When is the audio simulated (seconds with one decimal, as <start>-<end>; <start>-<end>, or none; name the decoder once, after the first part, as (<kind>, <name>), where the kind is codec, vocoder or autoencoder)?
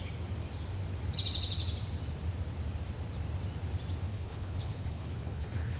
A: 4.1-5.8 (codec, HILCodec)